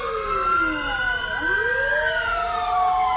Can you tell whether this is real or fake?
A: real